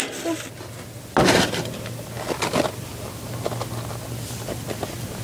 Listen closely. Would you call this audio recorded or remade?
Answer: recorded